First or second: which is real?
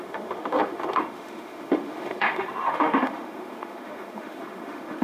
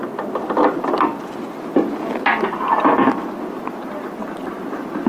second